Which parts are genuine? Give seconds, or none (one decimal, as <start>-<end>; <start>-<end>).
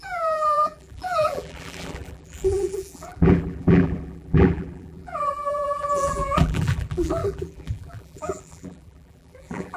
none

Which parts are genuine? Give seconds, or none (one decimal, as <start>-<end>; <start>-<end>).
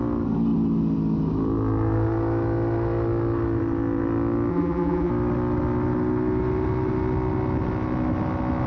0.0-4.5; 5.1-8.7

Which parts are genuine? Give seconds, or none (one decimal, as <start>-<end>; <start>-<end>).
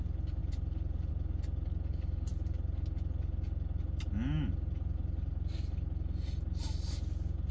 0.0-7.5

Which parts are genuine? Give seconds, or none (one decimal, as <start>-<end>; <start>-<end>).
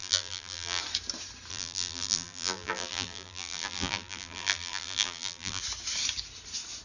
0.8-1.5; 5.6-6.8